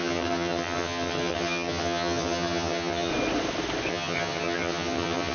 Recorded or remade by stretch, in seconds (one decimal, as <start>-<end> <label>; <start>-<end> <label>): 0.0-3.1 remade; 3.1-3.9 recorded; 3.9-5.3 remade